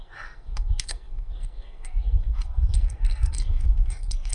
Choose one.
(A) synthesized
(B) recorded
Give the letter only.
A